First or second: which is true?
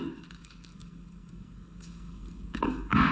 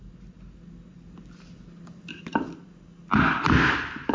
second